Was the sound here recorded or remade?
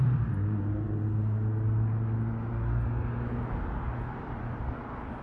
recorded